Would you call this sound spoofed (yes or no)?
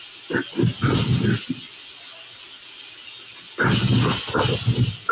no